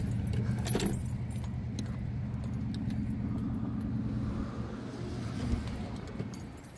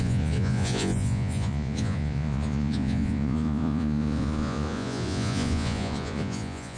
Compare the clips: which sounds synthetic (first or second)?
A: second